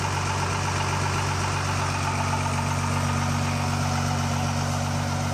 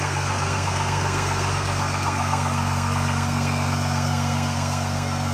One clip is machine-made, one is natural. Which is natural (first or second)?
first